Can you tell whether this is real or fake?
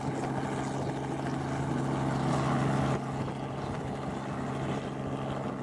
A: real